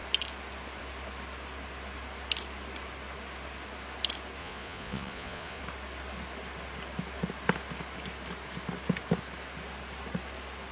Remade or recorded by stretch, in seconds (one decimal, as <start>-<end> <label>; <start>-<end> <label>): 0.0-4.4 recorded; 4.4-5.6 remade; 5.6-10.7 recorded